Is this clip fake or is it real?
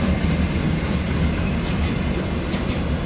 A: real